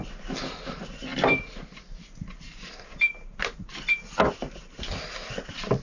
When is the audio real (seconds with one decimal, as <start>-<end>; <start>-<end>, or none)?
0.0-5.8